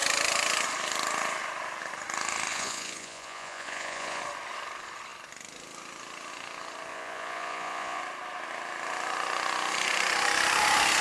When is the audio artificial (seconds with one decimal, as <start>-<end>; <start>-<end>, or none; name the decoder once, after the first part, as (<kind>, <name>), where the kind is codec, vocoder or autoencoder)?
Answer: 2.5-4.2 (vocoder, Vocos); 6.9-8.0